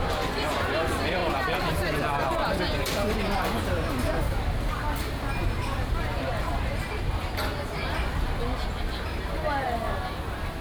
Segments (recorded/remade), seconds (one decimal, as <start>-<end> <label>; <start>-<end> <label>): 0.0-1.2 recorded; 1.2-1.7 remade; 1.7-5.4 recorded; 5.4-7.1 remade; 7.1-10.6 recorded